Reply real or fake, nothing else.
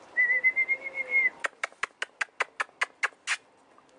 real